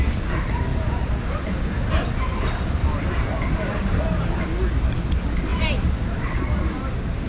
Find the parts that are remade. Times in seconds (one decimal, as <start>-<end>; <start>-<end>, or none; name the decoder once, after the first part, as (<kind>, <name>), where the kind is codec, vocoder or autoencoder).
0.7-1.5 (vocoder, BigVGAN v2); 2.8-4.0; 5.5-6.4